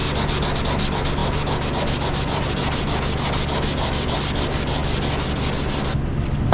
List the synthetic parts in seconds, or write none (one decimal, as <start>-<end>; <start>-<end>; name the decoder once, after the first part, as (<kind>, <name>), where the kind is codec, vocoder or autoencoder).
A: none